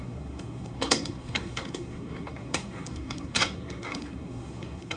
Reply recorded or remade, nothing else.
remade